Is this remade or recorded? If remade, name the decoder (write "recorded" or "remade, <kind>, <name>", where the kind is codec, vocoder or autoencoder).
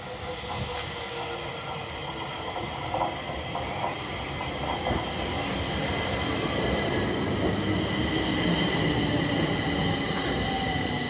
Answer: recorded